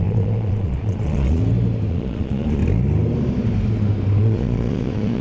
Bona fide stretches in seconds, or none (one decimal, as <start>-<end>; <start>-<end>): 1.4-1.9; 2.6-4.2